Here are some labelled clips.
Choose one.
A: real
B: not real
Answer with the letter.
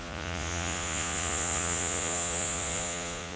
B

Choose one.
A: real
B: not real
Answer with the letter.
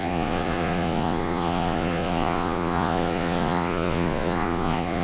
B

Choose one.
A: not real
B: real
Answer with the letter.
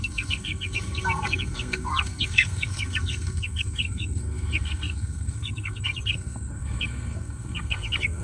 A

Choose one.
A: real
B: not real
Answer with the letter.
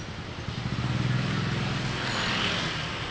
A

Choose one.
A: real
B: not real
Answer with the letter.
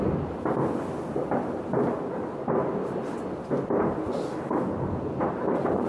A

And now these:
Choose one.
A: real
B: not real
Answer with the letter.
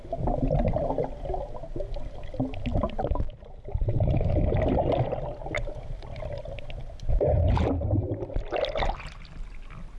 A